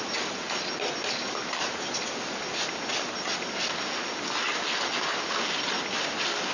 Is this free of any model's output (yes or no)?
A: yes